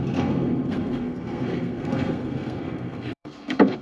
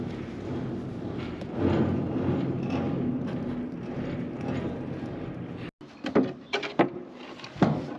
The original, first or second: second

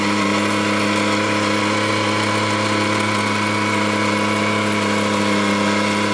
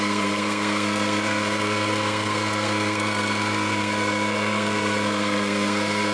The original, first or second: first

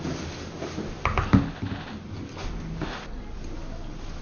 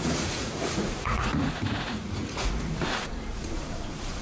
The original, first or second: first